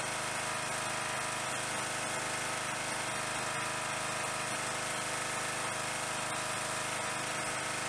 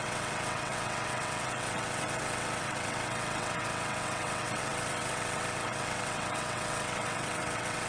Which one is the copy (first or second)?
second